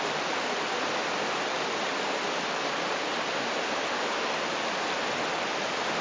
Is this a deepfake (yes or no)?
no